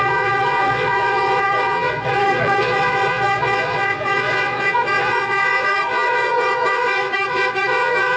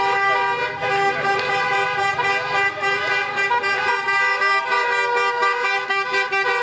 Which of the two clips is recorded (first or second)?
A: second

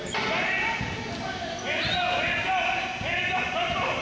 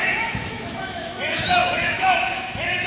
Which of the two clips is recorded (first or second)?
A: first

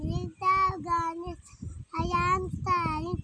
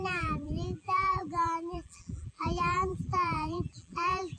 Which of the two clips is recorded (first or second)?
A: first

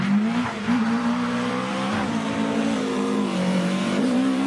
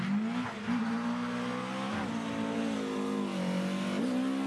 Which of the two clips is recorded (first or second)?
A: second